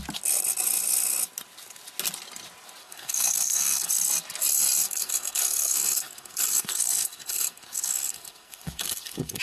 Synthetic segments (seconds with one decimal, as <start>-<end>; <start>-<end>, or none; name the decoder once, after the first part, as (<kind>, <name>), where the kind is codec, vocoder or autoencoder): 2.8-3.9 (codec, SNAC); 4.8-9.4